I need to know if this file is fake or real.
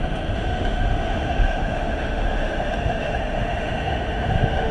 fake